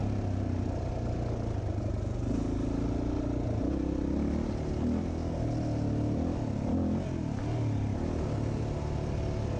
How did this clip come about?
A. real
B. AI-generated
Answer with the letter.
A